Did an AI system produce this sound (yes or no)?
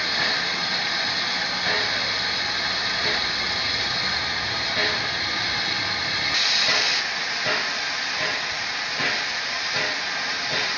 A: no